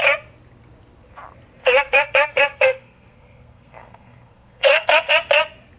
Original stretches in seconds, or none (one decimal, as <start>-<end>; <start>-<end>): 0.0-1.6; 5.1-5.8